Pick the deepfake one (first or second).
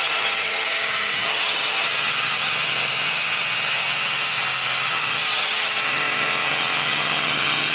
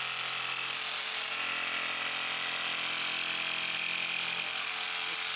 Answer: first